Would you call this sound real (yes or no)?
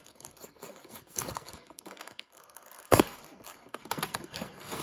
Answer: no